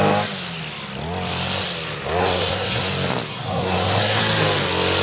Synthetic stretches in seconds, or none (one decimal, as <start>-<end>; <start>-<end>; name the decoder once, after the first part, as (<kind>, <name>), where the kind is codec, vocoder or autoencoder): 2.2-2.9 (codec, SNAC); 3.3-4.2